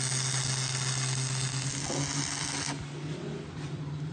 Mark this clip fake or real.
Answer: real